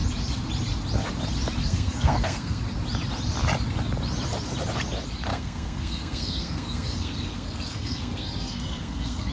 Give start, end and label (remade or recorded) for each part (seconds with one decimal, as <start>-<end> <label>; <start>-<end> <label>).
0.0-1.6 recorded; 1.6-2.6 remade; 2.6-5.3 recorded; 5.3-9.3 remade